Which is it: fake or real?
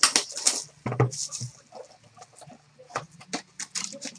real